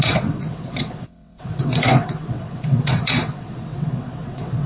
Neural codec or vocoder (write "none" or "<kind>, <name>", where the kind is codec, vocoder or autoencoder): vocoder, WaveNeXt